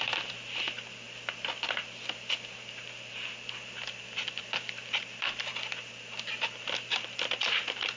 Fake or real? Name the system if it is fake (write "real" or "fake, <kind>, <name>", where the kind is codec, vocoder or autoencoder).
real